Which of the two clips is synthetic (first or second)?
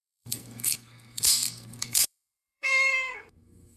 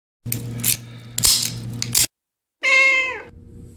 first